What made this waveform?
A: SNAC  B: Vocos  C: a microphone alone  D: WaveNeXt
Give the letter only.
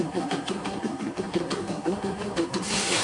A